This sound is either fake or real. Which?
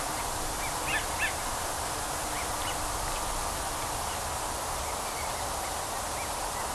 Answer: real